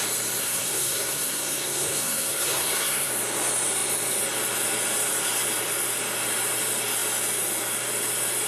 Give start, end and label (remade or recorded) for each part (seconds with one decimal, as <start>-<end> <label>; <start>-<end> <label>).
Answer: 0.0-0.4 recorded; 0.4-3.1 remade; 3.1-8.5 recorded